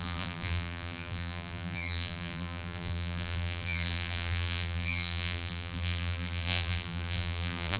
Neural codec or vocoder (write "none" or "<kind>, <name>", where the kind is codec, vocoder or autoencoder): vocoder, BigVGAN v2